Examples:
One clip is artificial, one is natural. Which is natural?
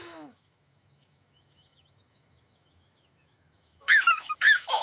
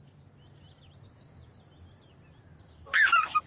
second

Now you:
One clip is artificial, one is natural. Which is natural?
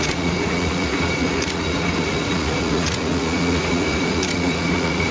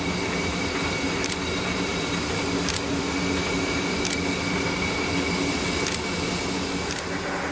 second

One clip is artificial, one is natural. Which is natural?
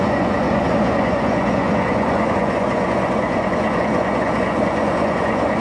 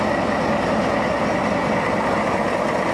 second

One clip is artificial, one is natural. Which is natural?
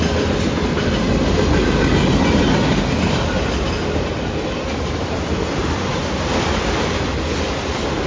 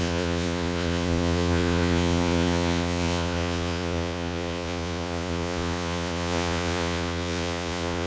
first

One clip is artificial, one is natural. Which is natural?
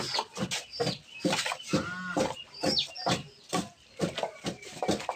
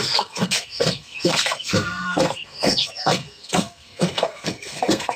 first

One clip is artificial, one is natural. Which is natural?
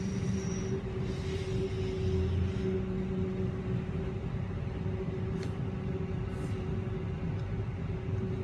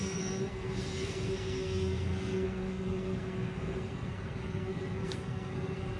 first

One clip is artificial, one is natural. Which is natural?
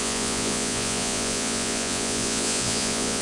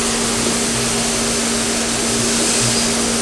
second